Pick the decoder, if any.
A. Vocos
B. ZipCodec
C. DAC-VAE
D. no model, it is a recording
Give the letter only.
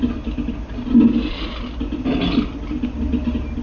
D